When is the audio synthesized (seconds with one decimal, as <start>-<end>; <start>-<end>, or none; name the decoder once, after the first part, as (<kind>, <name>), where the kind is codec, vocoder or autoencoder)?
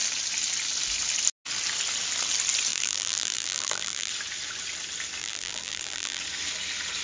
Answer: 2.7-4.1 (vocoder, BigVGAN v2); 5.2-6.2